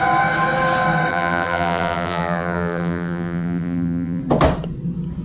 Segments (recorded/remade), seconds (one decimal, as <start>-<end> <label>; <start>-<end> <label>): 0.0-1.1 recorded; 1.1-4.2 remade; 4.2-5.2 recorded